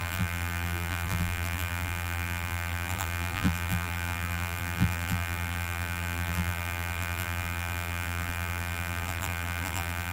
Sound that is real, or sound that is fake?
fake